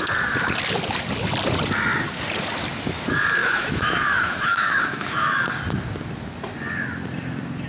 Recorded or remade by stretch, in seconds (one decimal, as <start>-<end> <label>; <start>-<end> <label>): 0.0-3.4 recorded; 3.4-5.3 remade; 5.3-7.7 recorded